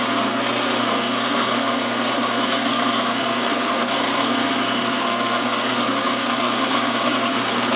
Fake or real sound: fake